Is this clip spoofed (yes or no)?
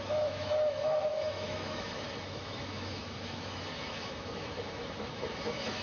yes